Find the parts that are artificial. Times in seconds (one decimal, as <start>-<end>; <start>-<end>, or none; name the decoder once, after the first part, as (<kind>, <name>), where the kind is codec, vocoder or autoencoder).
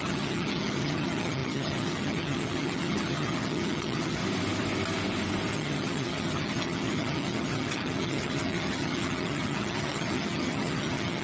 0.0-4.2 (vocoder, HiFi-GAN); 5.5-11.2